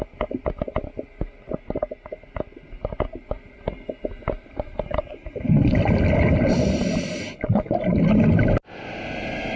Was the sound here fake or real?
real